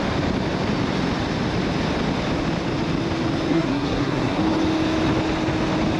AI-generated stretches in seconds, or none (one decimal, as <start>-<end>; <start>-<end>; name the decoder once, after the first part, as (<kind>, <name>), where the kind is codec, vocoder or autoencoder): 3.5-4.4 (codec, SNAC)